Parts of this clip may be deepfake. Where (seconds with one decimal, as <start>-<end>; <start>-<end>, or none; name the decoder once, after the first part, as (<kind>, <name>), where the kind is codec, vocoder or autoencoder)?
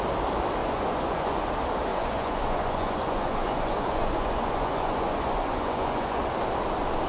0.6-1.5 (vocoder, Vocos); 1.9-6.2